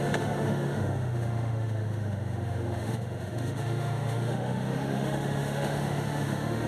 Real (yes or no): no